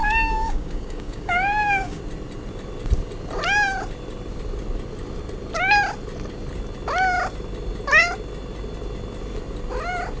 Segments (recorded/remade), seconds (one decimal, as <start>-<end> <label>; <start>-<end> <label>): 0.0-2.0 remade; 2.0-10.2 recorded

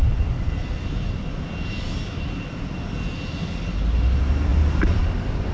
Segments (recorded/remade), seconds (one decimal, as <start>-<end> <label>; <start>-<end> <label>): 0.0-5.5 recorded